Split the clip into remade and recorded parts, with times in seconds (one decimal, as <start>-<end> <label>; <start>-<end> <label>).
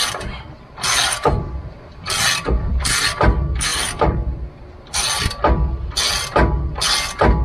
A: 0.0-7.4 recorded